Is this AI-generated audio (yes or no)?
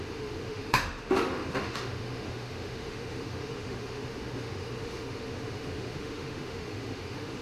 yes